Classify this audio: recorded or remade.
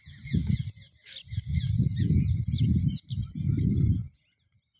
recorded